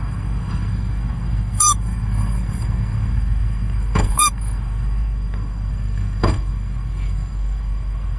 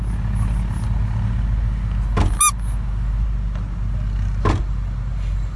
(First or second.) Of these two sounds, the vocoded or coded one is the first